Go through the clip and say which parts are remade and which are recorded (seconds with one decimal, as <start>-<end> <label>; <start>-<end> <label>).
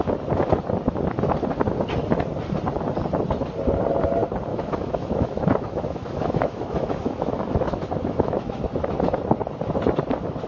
0.0-4.5 recorded; 4.5-8.6 remade; 8.6-10.5 recorded